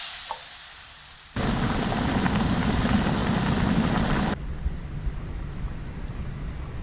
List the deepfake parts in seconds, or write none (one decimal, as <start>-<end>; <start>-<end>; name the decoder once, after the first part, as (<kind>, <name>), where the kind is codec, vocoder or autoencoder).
none